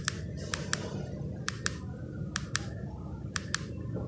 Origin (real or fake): real